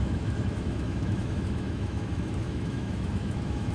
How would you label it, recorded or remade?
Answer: remade